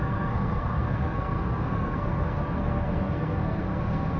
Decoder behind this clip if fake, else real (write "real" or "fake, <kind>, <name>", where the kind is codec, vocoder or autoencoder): fake, codec, SNAC